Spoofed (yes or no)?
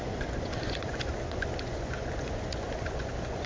yes